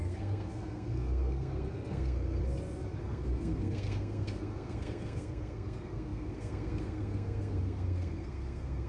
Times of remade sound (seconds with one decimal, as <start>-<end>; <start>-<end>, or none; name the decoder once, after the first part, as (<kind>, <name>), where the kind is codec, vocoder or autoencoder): 0.0-2.4 (codec, SNAC); 3.0-8.9